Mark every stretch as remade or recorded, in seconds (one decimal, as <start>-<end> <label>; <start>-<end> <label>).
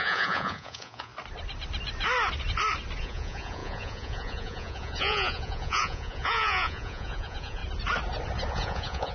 0.0-1.1 remade; 1.1-3.0 recorded; 3.0-7.6 remade; 7.6-8.5 recorded; 8.5-9.1 remade